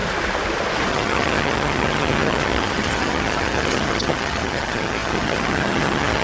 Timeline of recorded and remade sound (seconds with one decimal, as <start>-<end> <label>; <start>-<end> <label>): 0.0-0.9 recorded; 0.9-6.2 remade